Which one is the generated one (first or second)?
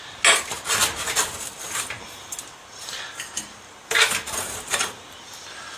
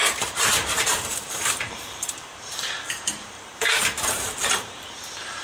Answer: second